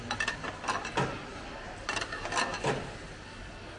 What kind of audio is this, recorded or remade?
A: recorded